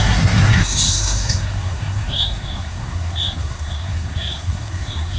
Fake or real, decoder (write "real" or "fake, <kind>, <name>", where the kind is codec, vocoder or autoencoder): fake, codec, SNAC